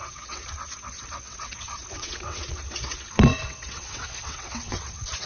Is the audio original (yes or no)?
no